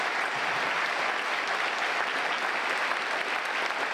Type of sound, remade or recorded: recorded